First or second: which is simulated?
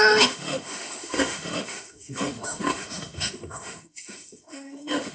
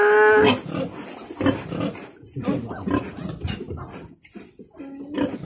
first